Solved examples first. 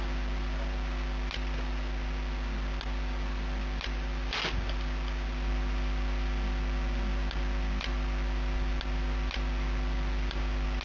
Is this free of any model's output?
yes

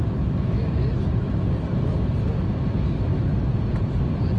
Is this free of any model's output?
yes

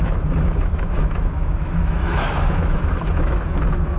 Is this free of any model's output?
no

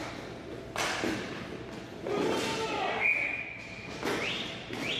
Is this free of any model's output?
yes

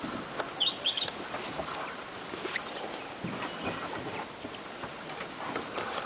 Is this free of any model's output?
yes